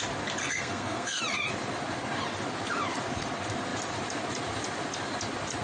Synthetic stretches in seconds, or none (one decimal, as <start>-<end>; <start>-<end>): 0.4-1.2